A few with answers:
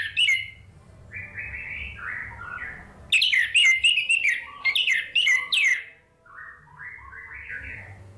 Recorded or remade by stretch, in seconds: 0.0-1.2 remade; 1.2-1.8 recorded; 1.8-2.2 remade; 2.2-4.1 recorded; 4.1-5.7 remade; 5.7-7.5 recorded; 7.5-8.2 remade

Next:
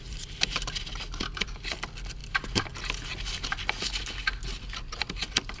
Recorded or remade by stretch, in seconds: 0.0-2.2 remade; 2.2-5.6 recorded

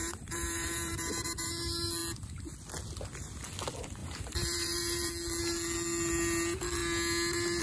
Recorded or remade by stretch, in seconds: 0.0-1.5 remade; 1.5-4.0 recorded; 4.0-5.1 remade; 5.1-7.6 recorded